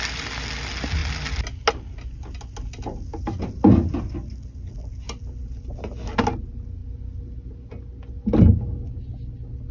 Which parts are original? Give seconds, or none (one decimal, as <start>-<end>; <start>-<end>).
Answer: 0.0-9.7